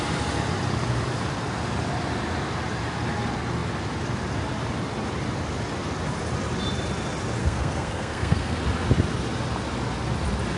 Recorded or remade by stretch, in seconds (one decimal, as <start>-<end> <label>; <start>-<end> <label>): 0.0-7.4 recorded; 7.4-8.6 remade; 8.6-10.6 recorded